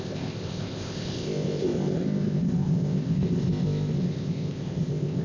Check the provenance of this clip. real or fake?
fake